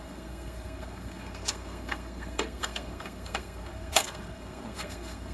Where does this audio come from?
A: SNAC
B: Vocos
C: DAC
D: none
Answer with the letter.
A